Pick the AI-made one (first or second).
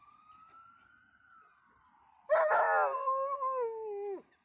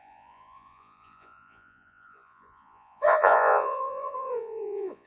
second